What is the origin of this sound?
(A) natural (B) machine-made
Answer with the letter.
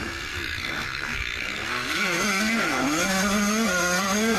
B